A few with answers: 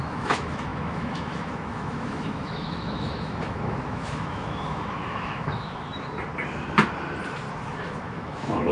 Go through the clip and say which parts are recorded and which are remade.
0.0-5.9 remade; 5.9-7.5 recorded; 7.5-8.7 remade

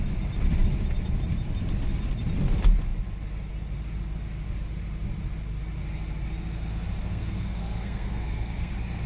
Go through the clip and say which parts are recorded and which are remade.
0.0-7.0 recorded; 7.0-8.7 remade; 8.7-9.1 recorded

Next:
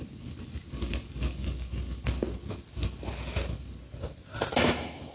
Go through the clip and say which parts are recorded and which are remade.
0.0-5.1 recorded